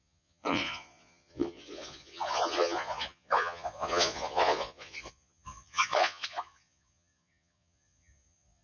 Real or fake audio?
fake